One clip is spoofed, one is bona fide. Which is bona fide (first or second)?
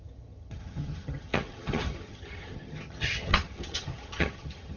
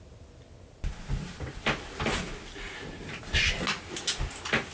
second